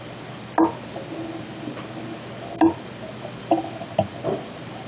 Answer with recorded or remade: recorded